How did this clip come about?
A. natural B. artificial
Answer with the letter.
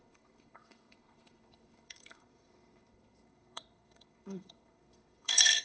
B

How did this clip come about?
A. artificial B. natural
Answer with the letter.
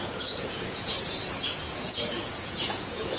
A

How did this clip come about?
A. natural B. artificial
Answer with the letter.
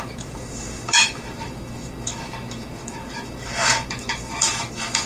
B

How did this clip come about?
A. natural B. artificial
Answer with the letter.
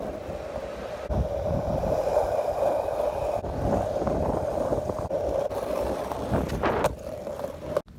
A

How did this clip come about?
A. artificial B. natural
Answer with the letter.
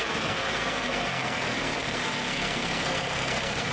A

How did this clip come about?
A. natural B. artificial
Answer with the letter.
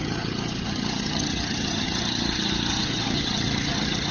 B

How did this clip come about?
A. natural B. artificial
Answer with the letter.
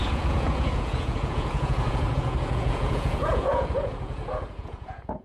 B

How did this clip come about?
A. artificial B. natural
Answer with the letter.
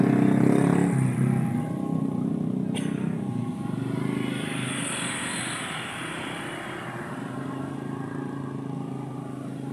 B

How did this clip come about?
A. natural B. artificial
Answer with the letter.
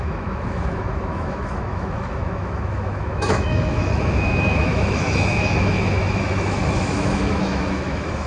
B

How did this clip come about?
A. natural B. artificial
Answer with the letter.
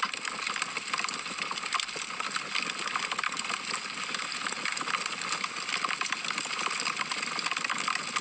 A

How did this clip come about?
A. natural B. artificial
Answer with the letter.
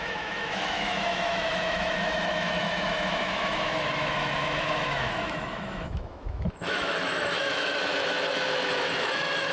B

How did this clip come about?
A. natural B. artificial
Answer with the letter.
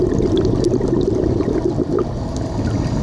A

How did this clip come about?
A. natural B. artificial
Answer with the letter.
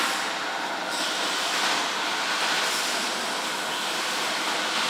B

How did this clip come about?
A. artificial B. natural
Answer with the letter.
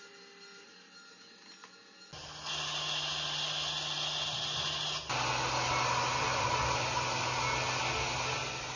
B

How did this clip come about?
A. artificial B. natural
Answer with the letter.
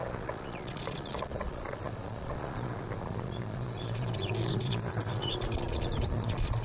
A